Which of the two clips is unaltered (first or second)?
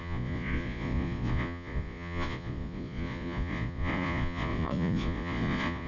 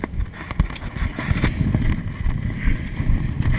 second